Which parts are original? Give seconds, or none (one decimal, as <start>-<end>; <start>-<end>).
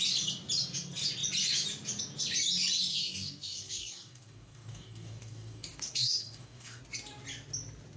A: 0.0-2.9; 6.8-8.0